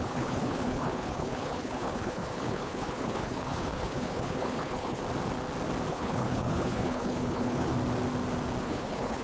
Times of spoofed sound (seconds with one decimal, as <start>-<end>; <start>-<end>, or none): 0.0-5.0; 5.9-7.7; 8.6-9.2